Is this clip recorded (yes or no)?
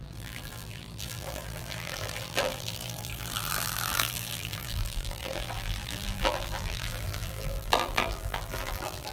no